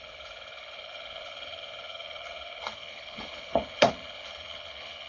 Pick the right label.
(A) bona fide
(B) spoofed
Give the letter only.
B